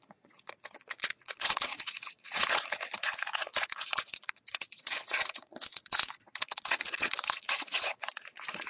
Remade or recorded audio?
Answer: remade